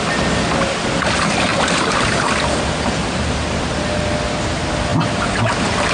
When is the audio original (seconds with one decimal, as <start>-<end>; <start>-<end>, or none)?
0.0-1.5; 4.0-5.9